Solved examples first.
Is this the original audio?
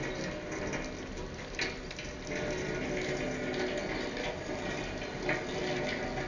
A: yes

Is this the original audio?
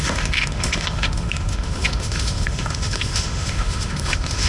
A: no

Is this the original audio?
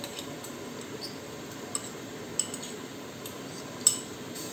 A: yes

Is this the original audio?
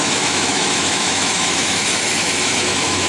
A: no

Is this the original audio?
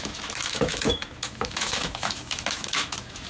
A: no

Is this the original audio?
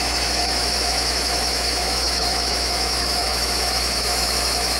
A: no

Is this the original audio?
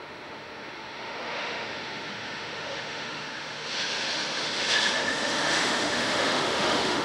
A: no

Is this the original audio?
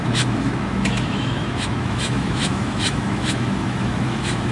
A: no